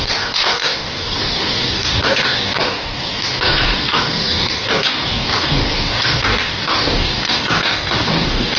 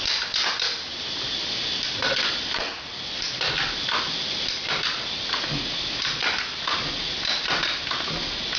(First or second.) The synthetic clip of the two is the first